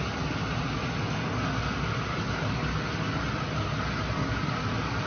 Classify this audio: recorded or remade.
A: recorded